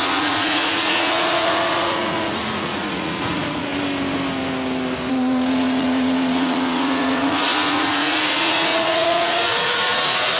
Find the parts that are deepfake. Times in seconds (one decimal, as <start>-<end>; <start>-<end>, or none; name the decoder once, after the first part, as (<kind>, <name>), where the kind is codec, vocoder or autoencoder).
0.0-3.7 (vocoder, Vocos); 5.1-10.4